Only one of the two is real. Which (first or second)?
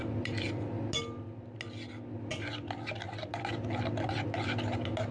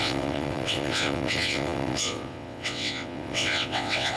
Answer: first